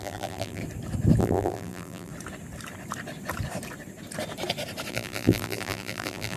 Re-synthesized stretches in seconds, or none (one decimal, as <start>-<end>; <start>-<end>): 0.0-0.6; 1.2-2.1; 4.9-6.4